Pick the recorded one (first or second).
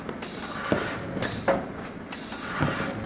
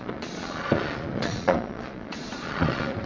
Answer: first